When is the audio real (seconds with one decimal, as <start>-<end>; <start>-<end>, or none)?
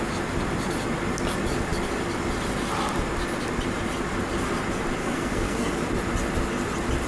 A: 0.0-5.0; 5.7-7.1